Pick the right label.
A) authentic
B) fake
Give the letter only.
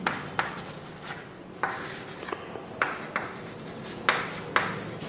A